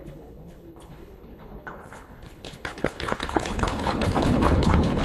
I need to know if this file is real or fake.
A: fake